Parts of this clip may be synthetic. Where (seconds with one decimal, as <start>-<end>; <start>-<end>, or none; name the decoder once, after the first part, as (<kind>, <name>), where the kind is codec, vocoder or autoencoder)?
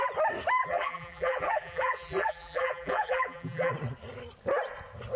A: 0.6-3.7 (vocoder, BigVGAN v2)